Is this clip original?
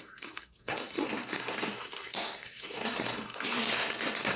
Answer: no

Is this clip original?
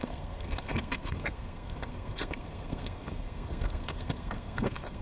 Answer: no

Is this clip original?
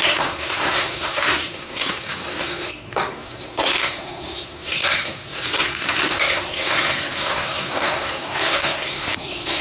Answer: no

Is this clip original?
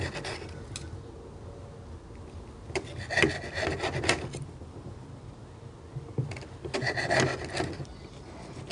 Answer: yes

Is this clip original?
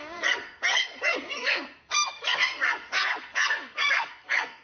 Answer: no